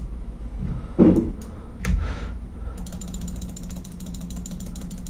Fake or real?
fake